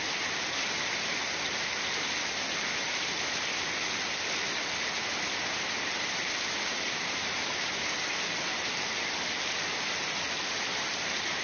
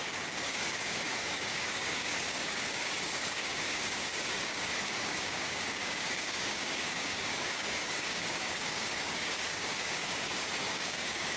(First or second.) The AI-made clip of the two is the second